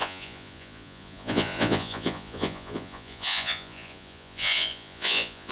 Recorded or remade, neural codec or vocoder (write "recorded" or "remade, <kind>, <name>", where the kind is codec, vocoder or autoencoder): remade, vocoder, Vocos